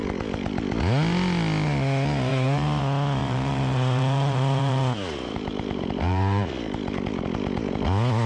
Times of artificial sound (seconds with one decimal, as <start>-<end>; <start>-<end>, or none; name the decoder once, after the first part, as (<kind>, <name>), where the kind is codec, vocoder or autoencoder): 2.3-2.8 (vocoder, BigVGAN v2); 3.2-6.5